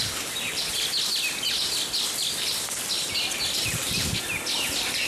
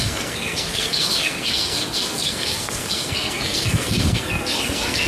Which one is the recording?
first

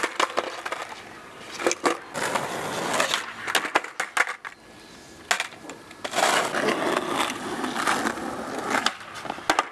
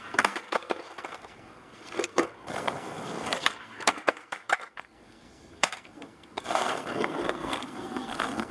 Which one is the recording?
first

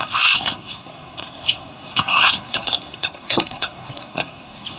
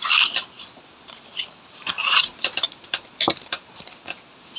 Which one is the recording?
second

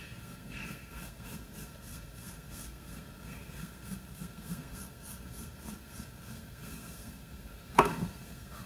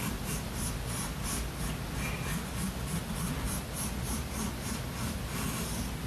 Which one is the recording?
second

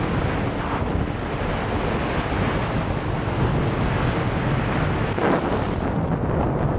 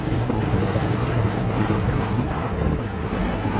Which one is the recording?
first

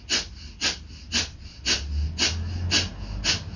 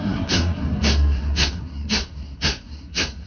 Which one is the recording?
first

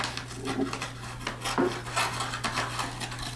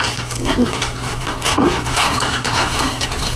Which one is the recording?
first